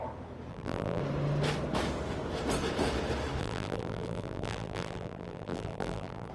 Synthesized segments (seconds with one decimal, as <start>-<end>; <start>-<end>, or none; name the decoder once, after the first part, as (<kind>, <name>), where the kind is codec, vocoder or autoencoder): 0.5-1.0 (vocoder, BigVGAN v2); 3.4-6.3